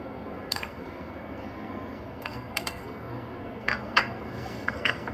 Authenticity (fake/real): fake